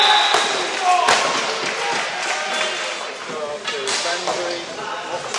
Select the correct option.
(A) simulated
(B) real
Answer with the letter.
B